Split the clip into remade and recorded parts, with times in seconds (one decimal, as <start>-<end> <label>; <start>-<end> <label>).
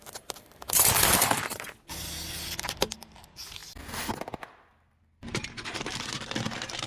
0.0-6.9 recorded